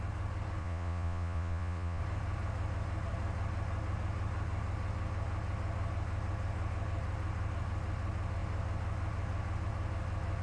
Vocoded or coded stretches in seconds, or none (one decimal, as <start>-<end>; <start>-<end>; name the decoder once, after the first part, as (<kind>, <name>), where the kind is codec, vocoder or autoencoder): 0.6-2.0 (vocoder, Vocos)